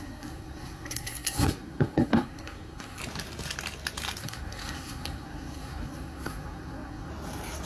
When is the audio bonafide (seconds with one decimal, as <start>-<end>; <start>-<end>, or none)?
3.0-4.2; 7.1-7.7